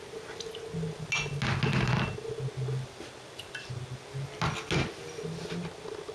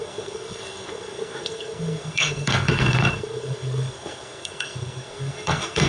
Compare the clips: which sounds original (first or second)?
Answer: first